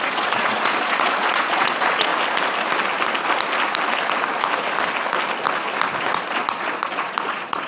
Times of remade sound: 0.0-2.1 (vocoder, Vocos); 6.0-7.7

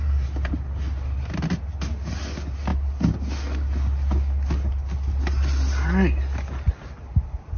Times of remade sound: none

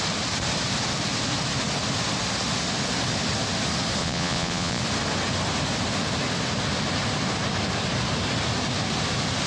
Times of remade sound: 4.0-4.8 (vocoder, Vocos)

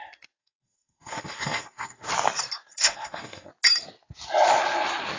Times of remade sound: 0.4-2.1 (codec, SNAC); 2.7-3.5